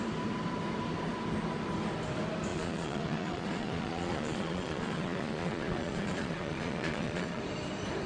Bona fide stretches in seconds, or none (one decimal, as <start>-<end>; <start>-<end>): 0.0-2.5; 7.4-8.1